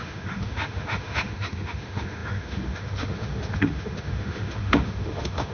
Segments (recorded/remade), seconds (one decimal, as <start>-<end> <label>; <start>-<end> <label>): 0.0-5.5 remade